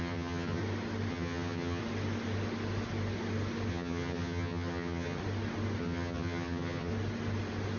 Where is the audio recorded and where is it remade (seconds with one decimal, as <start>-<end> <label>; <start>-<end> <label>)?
0.0-0.6 remade; 0.6-1.1 recorded; 1.1-1.8 remade; 1.8-3.7 recorded; 3.7-5.2 remade; 5.2-5.8 recorded; 5.8-6.9 remade; 6.9-7.8 recorded